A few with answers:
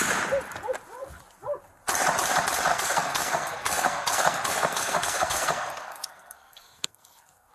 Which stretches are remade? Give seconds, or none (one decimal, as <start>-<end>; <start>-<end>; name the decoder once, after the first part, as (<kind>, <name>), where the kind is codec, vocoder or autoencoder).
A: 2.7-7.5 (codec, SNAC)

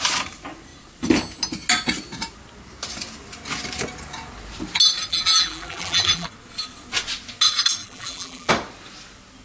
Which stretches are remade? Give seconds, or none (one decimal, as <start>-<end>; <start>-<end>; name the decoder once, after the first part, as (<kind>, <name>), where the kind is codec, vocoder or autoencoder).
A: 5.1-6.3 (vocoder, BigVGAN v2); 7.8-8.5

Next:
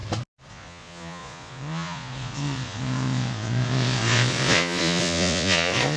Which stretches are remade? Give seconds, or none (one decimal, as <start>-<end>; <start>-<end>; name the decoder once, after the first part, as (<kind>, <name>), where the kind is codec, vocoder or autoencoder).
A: 0.5-6.0 (vocoder, Vocos)

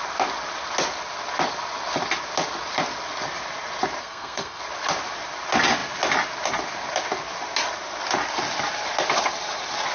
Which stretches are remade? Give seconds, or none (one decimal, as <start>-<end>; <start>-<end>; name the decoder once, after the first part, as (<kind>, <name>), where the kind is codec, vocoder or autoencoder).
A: 4.0-4.6 (codec, SNAC)

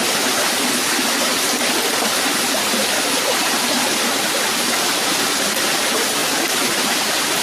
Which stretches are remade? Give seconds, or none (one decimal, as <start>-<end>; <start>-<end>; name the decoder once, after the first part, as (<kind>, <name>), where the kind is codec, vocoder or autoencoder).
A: 6.2-7.0 (vocoder, BigVGAN v2)